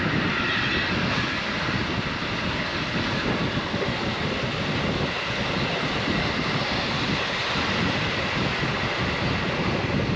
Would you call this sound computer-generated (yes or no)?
no